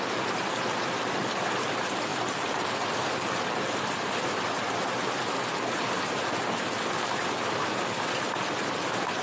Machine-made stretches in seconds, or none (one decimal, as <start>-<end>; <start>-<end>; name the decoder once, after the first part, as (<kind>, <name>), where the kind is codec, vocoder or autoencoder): none